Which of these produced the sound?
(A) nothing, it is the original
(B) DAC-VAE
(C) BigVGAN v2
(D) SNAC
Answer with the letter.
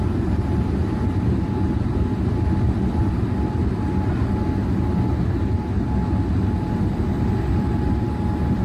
A